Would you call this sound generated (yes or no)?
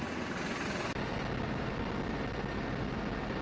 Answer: no